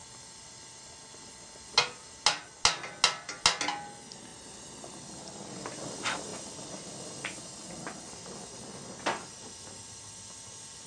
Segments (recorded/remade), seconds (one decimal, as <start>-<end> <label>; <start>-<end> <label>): 0.0-10.9 recorded